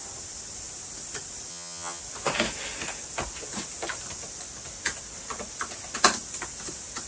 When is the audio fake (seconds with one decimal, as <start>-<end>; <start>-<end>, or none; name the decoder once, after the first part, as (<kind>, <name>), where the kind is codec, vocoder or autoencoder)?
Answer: 1.5-2.0 (vocoder, HiFi-GAN)